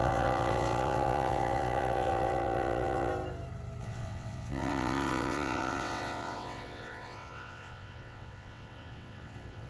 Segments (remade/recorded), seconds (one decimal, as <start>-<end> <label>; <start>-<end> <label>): 0.0-3.1 remade; 3.1-3.8 recorded; 3.8-9.7 remade

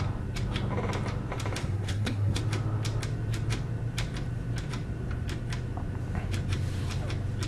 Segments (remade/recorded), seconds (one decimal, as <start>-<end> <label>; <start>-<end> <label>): 0.0-1.6 recorded; 1.6-2.4 remade; 2.4-7.5 recorded

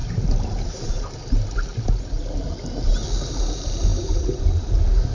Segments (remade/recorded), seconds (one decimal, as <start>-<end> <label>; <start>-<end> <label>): 0.0-5.1 recorded

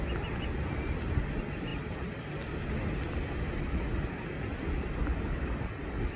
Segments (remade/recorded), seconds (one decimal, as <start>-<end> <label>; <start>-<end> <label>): 0.0-6.2 recorded